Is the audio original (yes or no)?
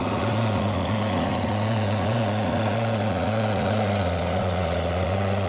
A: no